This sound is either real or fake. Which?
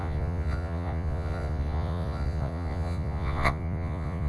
fake